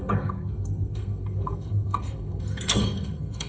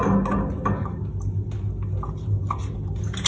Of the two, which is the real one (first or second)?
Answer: second